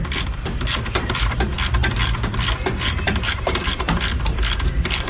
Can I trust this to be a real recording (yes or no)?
no